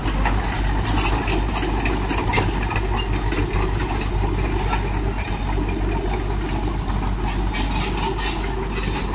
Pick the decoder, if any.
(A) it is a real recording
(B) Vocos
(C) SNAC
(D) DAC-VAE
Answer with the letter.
A